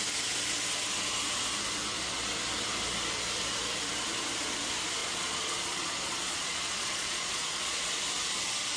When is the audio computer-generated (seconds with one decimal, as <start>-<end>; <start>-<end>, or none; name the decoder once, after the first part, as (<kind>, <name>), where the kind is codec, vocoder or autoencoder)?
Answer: 5.0-7.9 (vocoder, Vocos)